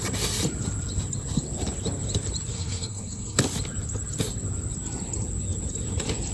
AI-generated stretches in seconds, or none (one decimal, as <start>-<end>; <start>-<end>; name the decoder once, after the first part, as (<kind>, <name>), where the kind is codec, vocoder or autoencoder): 2.5-3.4 (codec, SNAC)